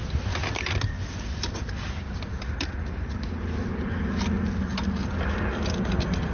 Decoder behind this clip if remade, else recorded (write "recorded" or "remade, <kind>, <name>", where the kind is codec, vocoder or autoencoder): recorded